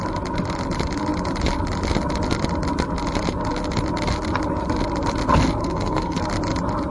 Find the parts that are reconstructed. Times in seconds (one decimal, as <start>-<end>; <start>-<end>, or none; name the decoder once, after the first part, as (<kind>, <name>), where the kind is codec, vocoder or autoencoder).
5.6-6.2 (codec, SNAC)